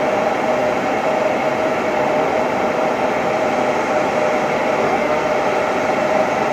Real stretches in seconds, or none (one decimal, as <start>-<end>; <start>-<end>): 0.0-4.8; 5.3-6.5